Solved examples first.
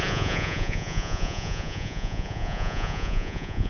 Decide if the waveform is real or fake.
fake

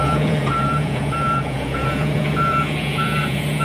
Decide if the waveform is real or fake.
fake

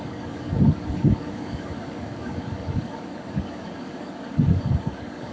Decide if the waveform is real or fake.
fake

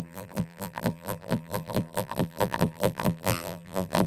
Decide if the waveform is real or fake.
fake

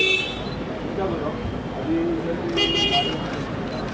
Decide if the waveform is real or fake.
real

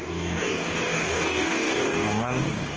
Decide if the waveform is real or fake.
fake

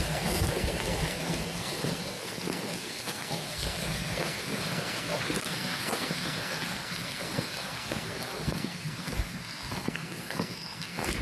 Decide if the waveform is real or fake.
fake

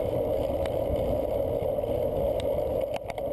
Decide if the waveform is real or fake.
fake